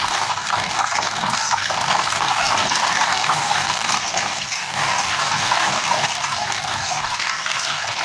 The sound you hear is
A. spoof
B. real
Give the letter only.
A